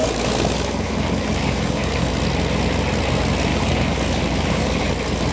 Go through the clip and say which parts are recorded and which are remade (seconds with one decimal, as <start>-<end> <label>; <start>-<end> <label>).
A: 0.0-2.1 remade; 2.1-3.5 recorded; 3.5-4.8 remade; 4.8-5.3 recorded